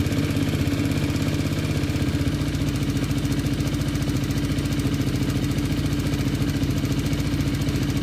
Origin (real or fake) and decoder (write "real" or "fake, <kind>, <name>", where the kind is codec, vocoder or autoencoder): real